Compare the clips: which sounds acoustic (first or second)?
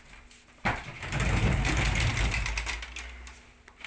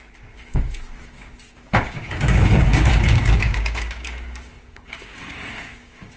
first